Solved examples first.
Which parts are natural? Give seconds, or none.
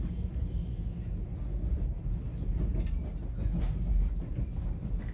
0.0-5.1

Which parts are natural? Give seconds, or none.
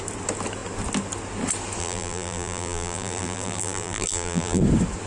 0.0-1.8; 4.6-5.1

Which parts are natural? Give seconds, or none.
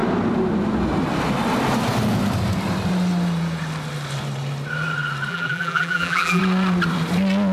0.0-5.3; 6.4-7.5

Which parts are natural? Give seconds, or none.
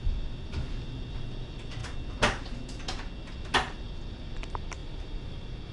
1.8-4.1